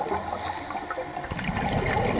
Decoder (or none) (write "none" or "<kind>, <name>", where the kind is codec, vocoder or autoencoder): none